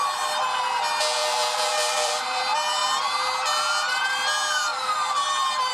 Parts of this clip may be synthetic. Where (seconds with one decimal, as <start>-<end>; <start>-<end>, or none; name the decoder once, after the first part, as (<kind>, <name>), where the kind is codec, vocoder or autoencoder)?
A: 1.2-2.4 (vocoder, BigVGAN v2); 4.7-5.7